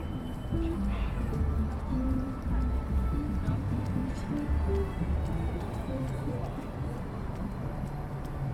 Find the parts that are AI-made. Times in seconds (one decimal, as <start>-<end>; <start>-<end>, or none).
0.0-4.0; 5.5-8.5